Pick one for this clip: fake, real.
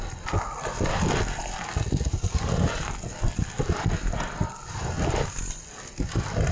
real